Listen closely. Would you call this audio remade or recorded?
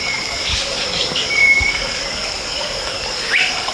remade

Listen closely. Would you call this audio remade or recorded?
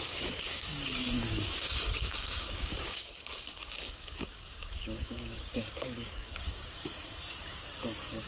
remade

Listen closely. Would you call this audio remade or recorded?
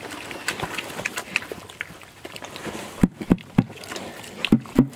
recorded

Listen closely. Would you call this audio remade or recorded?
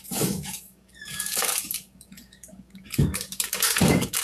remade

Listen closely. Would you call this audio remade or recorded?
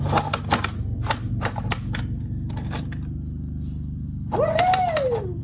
recorded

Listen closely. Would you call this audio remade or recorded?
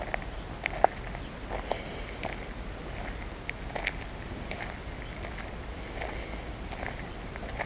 recorded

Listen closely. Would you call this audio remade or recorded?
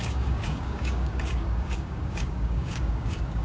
remade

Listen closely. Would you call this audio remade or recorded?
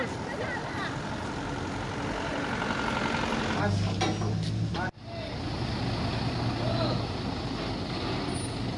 recorded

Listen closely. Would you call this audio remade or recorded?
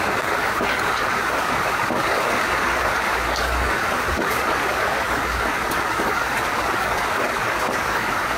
remade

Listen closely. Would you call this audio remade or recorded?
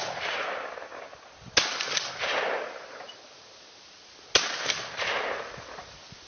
recorded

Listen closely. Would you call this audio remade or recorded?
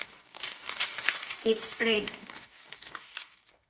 remade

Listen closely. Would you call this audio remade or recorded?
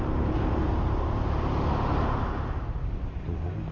recorded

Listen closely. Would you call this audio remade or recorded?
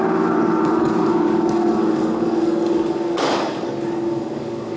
remade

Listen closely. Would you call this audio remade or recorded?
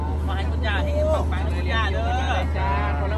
recorded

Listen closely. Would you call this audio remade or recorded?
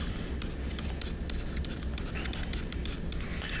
recorded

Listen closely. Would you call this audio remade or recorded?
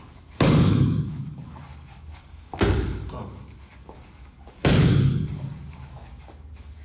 remade